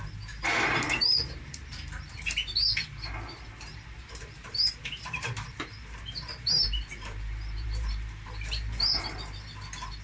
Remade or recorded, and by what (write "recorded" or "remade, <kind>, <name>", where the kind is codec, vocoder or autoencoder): remade, vocoder, BigVGAN v2